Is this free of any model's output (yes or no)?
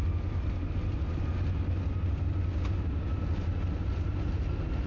yes